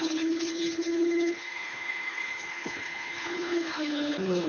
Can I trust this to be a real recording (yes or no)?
no